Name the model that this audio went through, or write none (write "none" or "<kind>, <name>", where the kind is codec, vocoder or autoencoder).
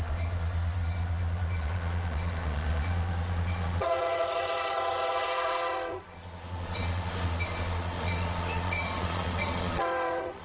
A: vocoder, Vocos